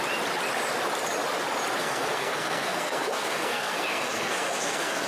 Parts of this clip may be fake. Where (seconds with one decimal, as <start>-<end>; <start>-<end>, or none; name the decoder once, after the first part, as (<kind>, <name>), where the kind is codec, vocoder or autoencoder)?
1.8-5.1 (codec, SNAC)